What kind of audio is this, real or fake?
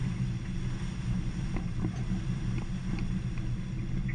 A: real